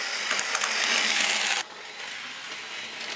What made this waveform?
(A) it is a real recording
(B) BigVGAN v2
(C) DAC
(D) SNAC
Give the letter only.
A